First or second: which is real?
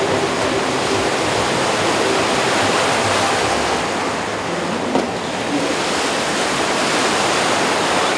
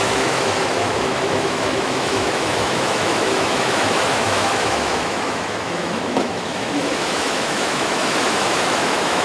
first